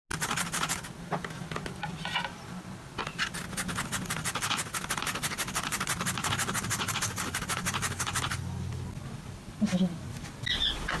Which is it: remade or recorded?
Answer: recorded